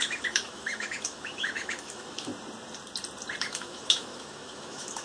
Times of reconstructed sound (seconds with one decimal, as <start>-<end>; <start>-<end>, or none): 0.0-2.3; 3.4-5.0